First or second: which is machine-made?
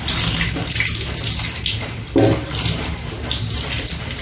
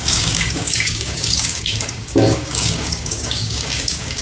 second